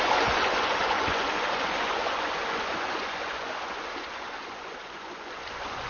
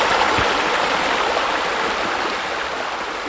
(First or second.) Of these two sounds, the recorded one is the second